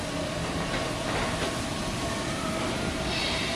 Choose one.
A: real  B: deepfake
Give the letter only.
A